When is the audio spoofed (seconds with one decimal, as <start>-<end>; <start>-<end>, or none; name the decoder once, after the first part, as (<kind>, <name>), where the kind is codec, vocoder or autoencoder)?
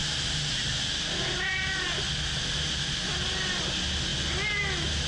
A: none